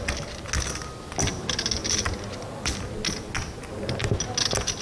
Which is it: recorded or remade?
recorded